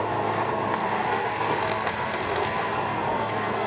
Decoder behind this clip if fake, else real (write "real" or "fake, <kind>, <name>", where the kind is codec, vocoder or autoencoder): fake, codec, SNAC